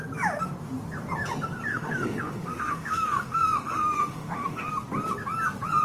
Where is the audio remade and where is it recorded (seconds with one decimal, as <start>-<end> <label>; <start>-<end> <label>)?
0.0-1.7 recorded; 1.7-4.7 remade; 4.7-5.8 recorded

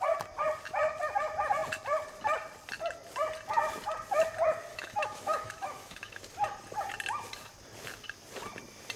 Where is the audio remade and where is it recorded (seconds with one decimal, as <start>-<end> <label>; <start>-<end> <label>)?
0.0-4.7 recorded; 4.7-6.2 remade; 6.2-9.0 recorded

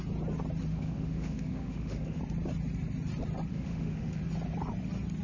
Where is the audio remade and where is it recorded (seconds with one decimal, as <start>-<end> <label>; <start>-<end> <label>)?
0.0-0.7 recorded; 0.7-2.2 remade; 2.2-3.5 recorded; 3.5-4.2 remade; 4.2-5.2 recorded

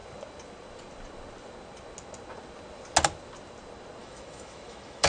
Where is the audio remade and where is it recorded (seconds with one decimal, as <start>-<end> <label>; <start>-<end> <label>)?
0.0-4.0 recorded; 4.0-5.1 remade